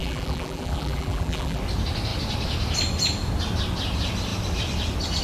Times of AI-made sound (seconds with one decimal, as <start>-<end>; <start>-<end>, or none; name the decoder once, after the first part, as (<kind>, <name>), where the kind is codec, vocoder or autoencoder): 0.0-1.6 (vocoder, BigVGAN v2)